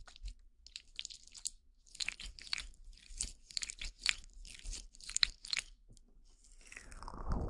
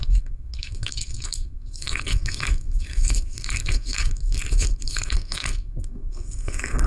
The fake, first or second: second